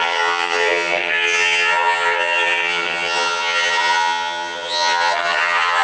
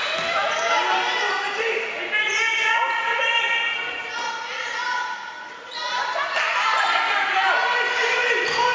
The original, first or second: second